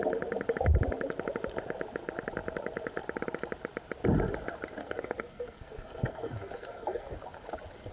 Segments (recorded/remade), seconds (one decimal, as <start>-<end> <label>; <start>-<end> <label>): 0.0-4.8 recorded; 4.8-7.1 remade; 7.1-7.9 recorded